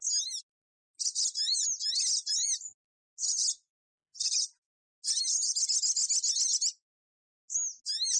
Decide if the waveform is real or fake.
real